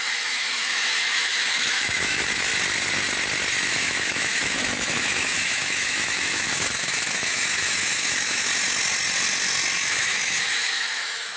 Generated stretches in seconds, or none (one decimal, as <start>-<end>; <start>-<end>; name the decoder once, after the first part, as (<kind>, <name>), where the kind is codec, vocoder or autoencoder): 0.0-2.5 (autoencoder, DAC-VAE); 3.7-8.5; 9.9-11.4